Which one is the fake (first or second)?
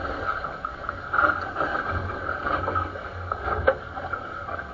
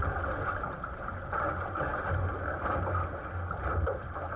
first